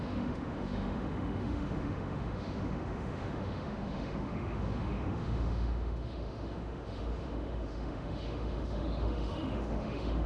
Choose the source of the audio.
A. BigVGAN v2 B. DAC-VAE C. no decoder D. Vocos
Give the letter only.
B